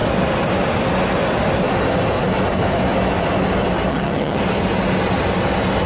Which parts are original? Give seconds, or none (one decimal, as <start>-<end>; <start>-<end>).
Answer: 0.0-3.9; 4.4-5.9